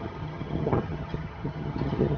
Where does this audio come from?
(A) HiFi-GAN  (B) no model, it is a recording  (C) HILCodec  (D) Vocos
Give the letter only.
A